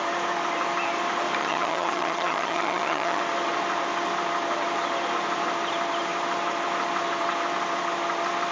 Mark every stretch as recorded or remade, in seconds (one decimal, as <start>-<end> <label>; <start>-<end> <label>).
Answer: 0.0-1.4 recorded; 1.4-3.2 remade; 3.2-8.5 recorded